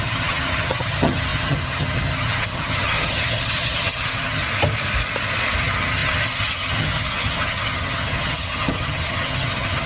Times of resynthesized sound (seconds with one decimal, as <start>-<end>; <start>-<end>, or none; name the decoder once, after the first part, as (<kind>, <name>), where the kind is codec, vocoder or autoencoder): 0.0-4.4 (vocoder, HiFi-GAN); 5.6-9.9